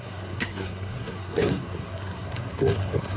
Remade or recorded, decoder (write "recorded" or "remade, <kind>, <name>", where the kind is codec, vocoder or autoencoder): remade, codec, SNAC